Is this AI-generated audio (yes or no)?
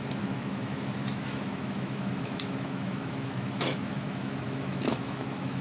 yes